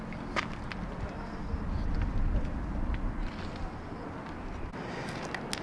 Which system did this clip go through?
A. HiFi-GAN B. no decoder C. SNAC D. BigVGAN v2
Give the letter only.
B